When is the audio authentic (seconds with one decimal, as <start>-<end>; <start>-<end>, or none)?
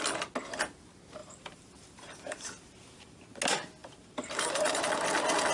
0.0-1.2; 3.2-3.8; 4.8-5.5